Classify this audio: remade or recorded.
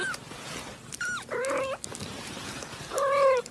recorded